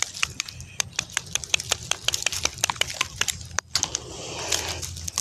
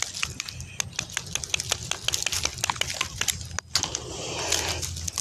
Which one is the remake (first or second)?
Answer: first